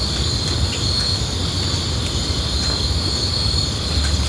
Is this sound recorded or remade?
recorded